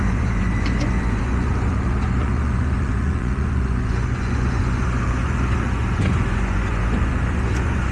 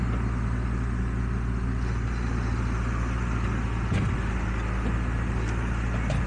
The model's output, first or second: first